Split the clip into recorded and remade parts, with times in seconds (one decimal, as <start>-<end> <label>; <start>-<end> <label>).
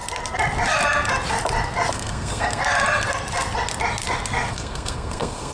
0.0-1.9 recorded; 1.9-2.6 remade; 2.6-4.5 recorded; 4.5-5.5 remade